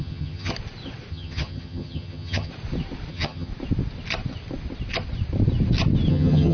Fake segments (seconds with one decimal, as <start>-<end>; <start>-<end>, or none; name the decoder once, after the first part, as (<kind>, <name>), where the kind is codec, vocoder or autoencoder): 0.0-0.5 (vocoder, HiFi-GAN); 1.1-2.5; 3.1-3.5; 6.1-6.5